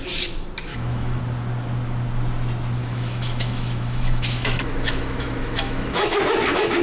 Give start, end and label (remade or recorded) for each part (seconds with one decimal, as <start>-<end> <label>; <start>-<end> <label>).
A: 0.0-0.7 recorded; 0.7-1.2 remade; 1.2-2.8 recorded; 2.8-6.2 remade; 6.2-6.8 recorded